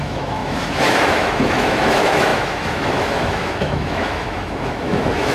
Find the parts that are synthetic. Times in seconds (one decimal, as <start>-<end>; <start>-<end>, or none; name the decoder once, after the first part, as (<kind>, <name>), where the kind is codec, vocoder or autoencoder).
0.0-5.3 (autoencoder, DAC-VAE)